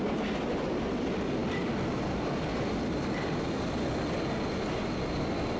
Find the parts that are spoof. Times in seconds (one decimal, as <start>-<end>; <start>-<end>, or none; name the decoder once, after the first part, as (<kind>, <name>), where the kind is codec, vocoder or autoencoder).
none